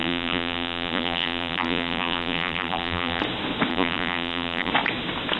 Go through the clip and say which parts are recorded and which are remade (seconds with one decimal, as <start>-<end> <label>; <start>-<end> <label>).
0.0-3.2 remade; 3.2-3.7 recorded; 3.7-4.7 remade; 4.7-5.4 recorded